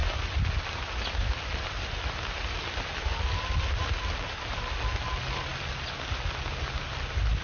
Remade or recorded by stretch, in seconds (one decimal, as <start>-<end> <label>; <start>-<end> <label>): 0.0-7.4 recorded